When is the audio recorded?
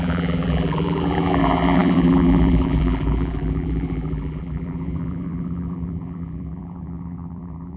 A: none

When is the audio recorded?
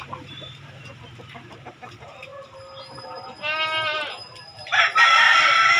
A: 2.3-4.0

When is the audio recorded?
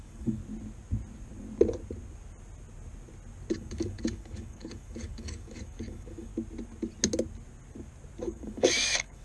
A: 0.4-3.5; 6.3-8.2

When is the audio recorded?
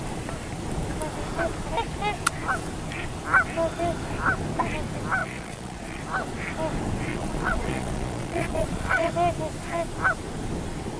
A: 0.0-5.2; 6.0-7.1; 9.1-11.0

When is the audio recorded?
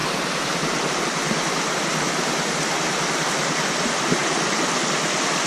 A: 0.0-5.5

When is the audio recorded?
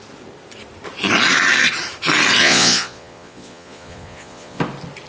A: 0.0-2.4; 4.6-5.1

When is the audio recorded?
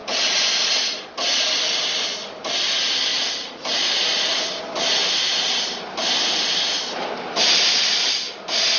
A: 0.5-3.1; 4.6-5.0; 7.8-8.8